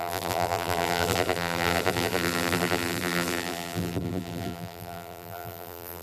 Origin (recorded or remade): remade